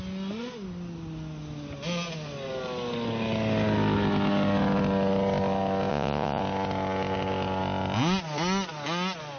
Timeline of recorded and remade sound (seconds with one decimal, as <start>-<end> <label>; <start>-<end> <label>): 0.0-5.9 recorded; 5.9-6.4 remade; 6.4-9.4 recorded